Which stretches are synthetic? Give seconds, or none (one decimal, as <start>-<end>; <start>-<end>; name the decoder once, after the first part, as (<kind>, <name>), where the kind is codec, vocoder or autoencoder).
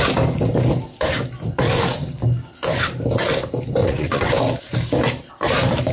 3.8-4.3 (vocoder, WaveNeXt)